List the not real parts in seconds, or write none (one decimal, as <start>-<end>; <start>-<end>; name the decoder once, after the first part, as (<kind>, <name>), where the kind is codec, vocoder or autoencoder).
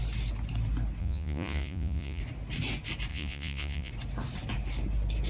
1.0-2.2 (vocoder, Vocos); 3.1-3.9